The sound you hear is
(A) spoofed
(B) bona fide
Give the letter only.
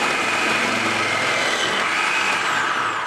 B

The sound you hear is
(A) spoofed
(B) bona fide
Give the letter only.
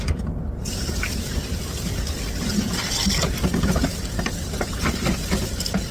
B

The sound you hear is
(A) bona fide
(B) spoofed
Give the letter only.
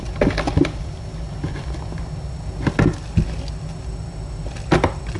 A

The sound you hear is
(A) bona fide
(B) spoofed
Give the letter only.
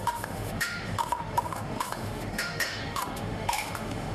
B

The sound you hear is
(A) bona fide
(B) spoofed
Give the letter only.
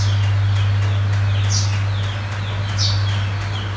A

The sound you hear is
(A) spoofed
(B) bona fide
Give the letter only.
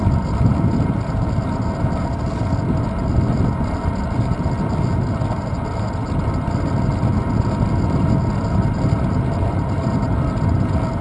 B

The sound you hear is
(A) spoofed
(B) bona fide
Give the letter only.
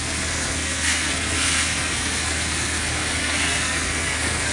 A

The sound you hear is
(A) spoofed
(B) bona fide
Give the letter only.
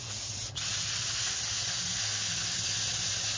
B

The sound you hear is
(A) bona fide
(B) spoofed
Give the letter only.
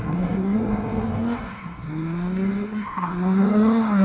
B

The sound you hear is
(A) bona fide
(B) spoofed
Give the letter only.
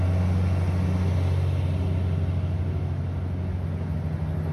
A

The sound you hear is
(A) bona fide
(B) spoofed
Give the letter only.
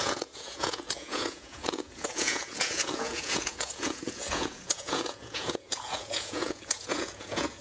B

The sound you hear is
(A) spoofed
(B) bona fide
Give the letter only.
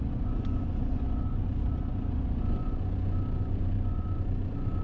A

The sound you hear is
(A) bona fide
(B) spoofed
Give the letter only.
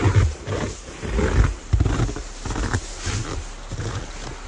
A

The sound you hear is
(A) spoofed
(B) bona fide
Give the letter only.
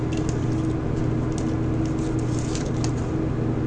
B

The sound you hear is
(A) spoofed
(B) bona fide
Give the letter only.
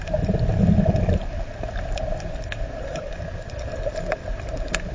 A